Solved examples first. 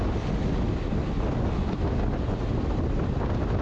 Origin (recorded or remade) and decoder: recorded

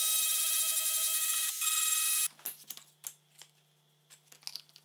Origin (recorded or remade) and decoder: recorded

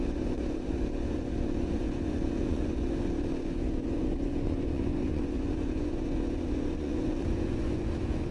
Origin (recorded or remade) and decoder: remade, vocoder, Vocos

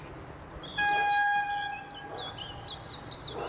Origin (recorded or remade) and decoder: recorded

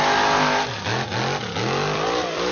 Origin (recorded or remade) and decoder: recorded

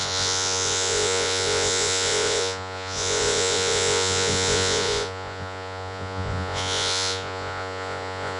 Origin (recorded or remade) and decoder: remade, vocoder, Vocos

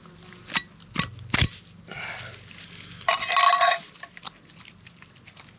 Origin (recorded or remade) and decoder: recorded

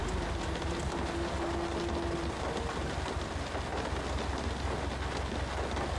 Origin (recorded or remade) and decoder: recorded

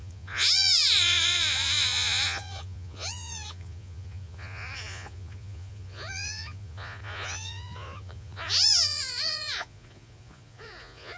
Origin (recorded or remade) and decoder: remade, vocoder, Vocos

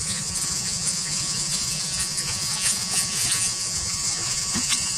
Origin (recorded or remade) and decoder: remade, vocoder, Vocos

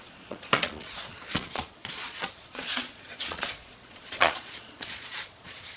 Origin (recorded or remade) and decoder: remade, vocoder, Vocos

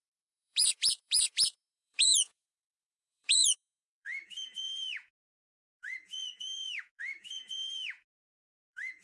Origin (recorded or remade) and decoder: remade, vocoder, Vocos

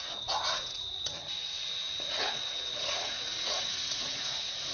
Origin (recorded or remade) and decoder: remade, vocoder, Vocos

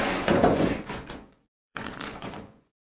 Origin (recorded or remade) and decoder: remade, vocoder, Vocos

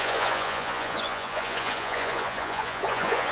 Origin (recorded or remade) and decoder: remade, vocoder, Vocos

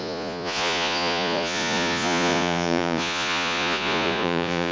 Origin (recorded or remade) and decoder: remade, vocoder, Vocos